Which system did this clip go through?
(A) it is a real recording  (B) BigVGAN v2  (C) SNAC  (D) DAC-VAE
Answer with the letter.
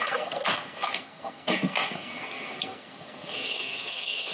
C